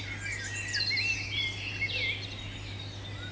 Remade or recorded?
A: recorded